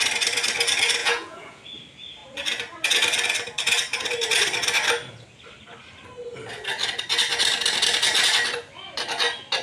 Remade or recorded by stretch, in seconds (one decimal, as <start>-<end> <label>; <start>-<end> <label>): 0.0-1.0 recorded; 1.0-1.6 remade; 1.6-9.6 recorded